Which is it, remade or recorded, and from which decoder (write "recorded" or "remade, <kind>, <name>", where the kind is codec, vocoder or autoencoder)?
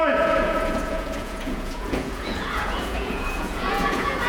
remade, vocoder, Vocos